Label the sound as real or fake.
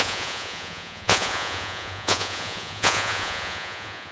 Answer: fake